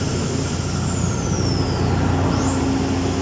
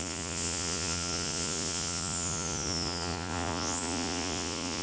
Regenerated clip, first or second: second